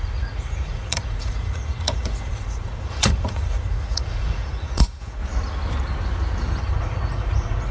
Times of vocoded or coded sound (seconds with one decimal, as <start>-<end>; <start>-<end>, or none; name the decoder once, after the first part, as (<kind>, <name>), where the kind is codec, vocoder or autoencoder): 0.0-5.2 (vocoder, Vocos); 6.6-7.7